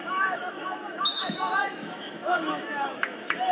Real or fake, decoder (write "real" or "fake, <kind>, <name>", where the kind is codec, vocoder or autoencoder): fake, autoencoder, DAC-VAE